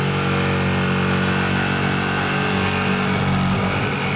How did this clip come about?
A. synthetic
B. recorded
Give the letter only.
B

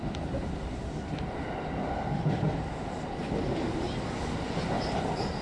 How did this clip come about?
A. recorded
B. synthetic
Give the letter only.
A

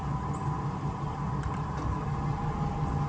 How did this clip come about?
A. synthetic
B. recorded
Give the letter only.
B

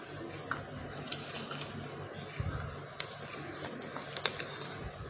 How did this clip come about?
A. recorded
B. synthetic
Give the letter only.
A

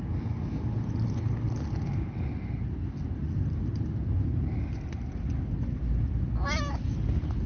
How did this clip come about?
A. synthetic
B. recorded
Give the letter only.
B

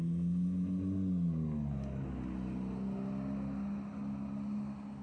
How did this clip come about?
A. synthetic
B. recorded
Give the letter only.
B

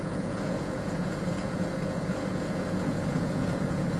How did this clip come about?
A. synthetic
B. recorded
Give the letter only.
A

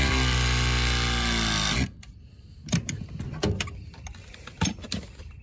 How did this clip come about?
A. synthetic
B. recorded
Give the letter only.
B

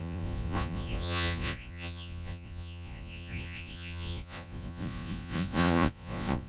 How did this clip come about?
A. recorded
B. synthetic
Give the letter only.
B